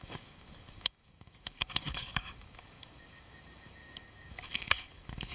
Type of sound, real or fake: fake